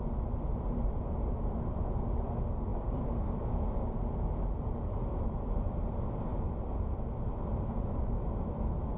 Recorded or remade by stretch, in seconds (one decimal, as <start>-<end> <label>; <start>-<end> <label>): 0.0-9.0 recorded